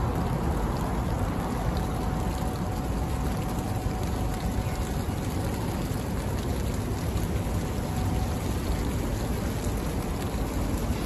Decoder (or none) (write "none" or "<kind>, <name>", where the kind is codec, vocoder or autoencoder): none